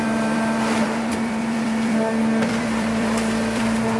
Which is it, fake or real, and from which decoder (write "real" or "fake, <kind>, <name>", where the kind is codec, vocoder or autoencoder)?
fake, vocoder, BigVGAN v2